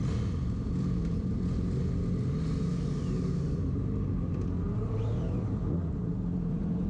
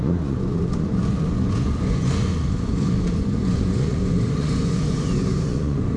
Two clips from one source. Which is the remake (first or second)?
second